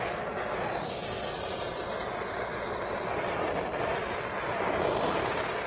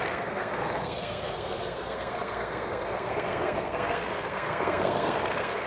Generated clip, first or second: second